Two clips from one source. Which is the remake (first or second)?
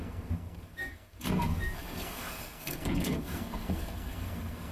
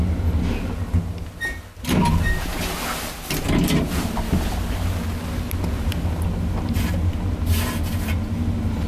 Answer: first